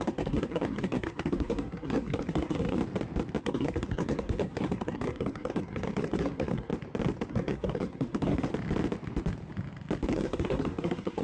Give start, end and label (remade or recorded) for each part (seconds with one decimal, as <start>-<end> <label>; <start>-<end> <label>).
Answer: 0.0-2.8 remade; 2.8-3.4 recorded; 3.4-6.7 remade; 6.7-7.3 recorded; 7.3-8.5 remade; 8.5-10.1 recorded; 10.1-11.2 remade